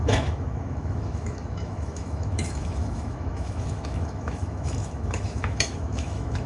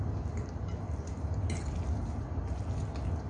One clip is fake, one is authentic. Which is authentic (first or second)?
second